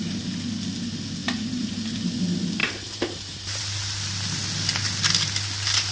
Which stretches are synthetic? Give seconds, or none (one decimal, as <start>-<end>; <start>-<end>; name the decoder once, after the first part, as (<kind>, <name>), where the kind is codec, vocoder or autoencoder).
1.2-1.7 (vocoder, BigVGAN v2); 2.6-3.6